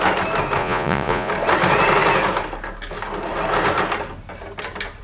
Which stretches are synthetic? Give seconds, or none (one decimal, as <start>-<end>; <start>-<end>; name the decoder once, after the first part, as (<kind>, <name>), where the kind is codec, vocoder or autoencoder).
0.6-1.3 (vocoder, Vocos)